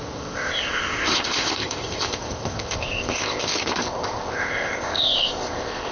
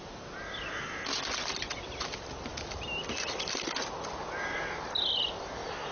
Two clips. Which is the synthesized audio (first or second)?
first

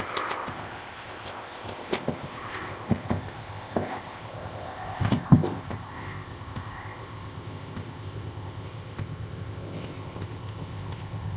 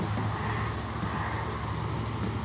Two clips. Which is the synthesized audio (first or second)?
first